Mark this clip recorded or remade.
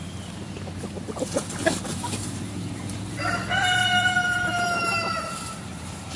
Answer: remade